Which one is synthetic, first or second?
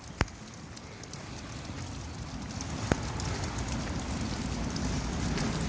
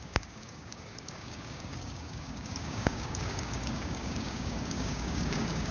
second